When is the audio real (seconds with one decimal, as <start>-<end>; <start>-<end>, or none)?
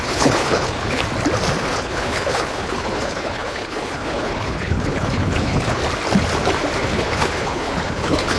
1.0-1.6; 5.8-6.8